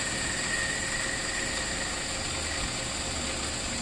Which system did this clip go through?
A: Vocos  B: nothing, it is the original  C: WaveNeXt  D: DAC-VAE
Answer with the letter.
B